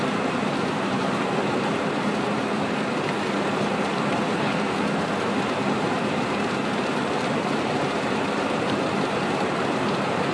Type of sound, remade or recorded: remade